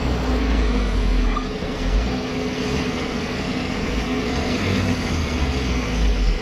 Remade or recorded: remade